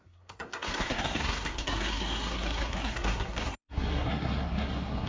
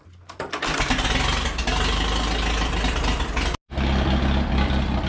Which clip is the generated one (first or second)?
first